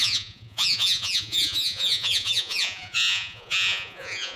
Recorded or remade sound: remade